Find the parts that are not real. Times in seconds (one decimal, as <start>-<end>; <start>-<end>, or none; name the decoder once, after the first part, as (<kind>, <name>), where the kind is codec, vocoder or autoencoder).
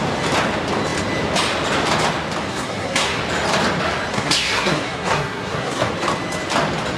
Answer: 2.5-3.2 (codec, SNAC); 4.1-5.9